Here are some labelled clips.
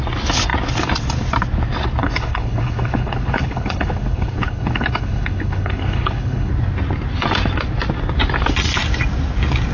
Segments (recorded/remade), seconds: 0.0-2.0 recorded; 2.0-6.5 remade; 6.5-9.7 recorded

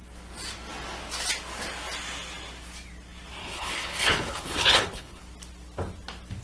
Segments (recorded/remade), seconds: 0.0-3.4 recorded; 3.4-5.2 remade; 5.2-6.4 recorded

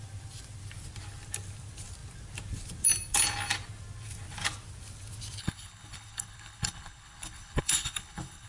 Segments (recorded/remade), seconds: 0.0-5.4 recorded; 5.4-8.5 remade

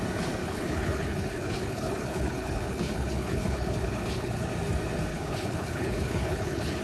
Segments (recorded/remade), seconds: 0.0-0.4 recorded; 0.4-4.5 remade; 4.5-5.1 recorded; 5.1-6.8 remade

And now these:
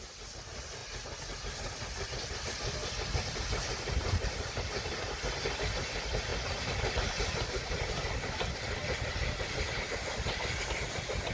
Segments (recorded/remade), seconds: 0.0-11.3 recorded

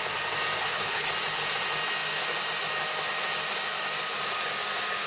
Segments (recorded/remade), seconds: 0.0-0.6 recorded; 0.6-1.1 remade; 1.1-5.1 recorded

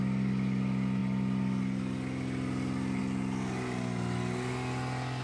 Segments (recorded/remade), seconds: 0.0-5.2 recorded

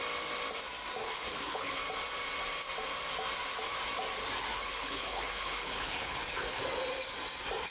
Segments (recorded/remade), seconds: 0.0-1.0 recorded; 1.0-1.8 remade; 1.8-4.5 recorded; 4.5-6.6 remade; 6.6-7.7 recorded